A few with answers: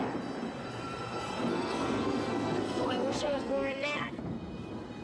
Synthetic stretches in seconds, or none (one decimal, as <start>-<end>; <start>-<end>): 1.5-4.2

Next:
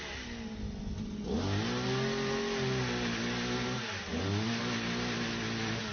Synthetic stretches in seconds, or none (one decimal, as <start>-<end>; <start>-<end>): none

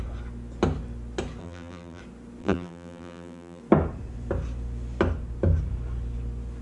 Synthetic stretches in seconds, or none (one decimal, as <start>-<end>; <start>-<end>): 1.4-2.0; 2.4-3.6

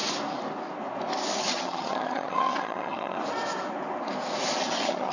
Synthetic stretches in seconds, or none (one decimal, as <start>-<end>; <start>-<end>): 1.4-3.2; 4.6-5.1